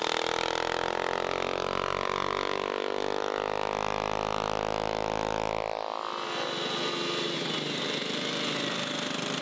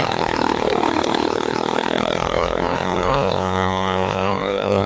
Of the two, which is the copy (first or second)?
second